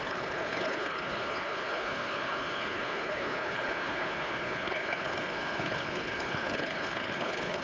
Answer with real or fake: fake